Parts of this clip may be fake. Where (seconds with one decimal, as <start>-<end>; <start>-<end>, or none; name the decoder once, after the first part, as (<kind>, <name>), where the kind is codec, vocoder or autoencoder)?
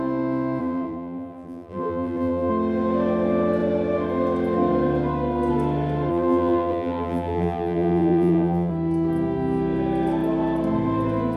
0.6-2.5 (vocoder, BigVGAN v2); 6.1-8.7